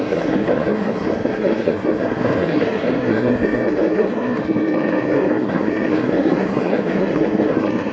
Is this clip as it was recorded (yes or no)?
no